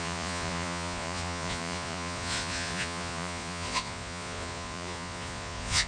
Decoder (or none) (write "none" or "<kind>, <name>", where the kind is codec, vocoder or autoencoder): vocoder, Vocos